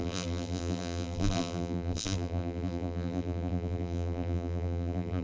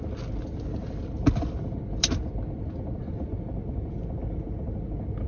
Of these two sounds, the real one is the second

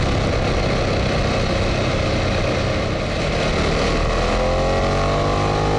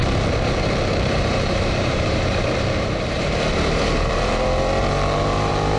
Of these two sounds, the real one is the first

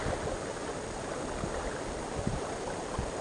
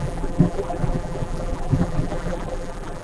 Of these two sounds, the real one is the first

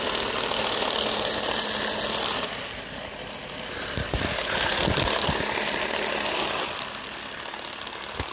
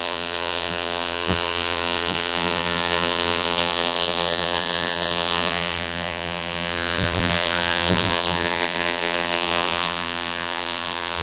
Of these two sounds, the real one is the first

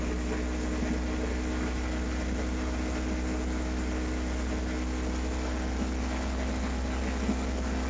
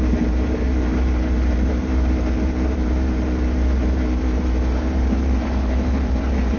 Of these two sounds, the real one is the first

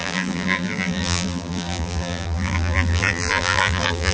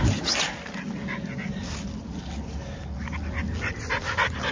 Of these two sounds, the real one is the second